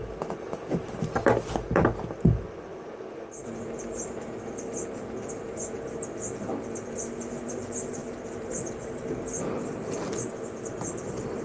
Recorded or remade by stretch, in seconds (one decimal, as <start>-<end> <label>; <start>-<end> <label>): 0.0-11.4 recorded